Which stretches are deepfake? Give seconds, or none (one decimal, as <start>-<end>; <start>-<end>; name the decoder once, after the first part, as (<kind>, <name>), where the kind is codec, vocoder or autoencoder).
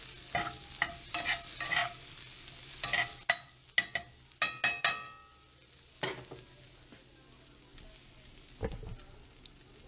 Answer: none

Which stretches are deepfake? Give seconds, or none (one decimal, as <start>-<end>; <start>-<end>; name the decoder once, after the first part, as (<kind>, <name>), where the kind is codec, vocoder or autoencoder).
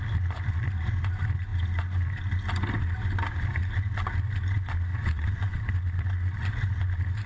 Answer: 4.9-5.6 (vocoder, WaveNeXt)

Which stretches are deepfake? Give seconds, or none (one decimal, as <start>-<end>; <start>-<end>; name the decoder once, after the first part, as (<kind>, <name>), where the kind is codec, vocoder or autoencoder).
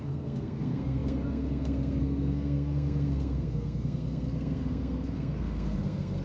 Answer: 0.0-6.2 (codec, SNAC)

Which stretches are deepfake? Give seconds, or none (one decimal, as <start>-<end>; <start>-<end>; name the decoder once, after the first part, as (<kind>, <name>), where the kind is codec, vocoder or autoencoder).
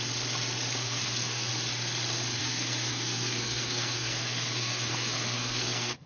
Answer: 0.8-1.5 (codec, SNAC); 2.4-6.1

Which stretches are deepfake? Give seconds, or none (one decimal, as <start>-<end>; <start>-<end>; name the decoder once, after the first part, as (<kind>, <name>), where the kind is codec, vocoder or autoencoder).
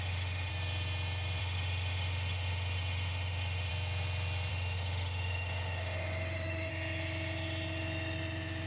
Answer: 0.0-0.5 (autoencoder, DAC-VAE); 1.4-3.7; 4.5-6.7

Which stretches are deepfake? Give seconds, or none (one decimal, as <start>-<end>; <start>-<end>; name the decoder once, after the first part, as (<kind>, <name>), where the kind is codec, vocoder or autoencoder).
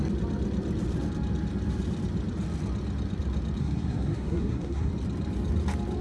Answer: 3.6-4.9 (codec, SNAC)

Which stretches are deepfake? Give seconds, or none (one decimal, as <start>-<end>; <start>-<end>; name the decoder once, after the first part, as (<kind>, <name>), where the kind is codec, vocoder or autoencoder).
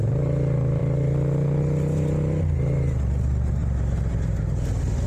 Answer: none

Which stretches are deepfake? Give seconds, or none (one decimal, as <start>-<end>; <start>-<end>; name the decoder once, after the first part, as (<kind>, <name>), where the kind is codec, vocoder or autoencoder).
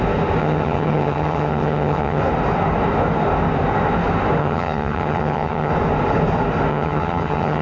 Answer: 0.4-2.2 (vocoder, HiFi-GAN); 4.4-5.7; 6.7-7.6